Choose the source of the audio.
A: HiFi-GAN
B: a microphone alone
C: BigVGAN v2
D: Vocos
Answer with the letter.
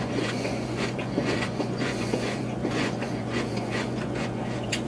D